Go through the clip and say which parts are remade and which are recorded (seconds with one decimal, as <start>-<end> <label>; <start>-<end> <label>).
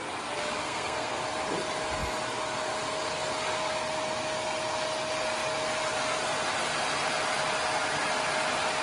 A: 0.0-0.6 recorded; 0.6-1.2 remade; 1.2-8.8 recorded